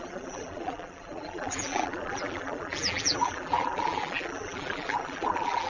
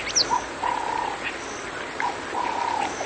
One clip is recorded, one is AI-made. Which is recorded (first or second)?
second